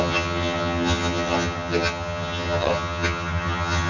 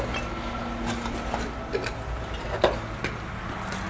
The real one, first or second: second